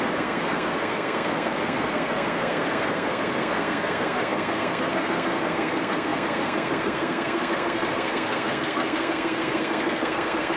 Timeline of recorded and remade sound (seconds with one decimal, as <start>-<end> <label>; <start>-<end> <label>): 0.0-10.6 remade